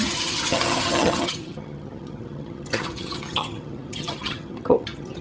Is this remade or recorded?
remade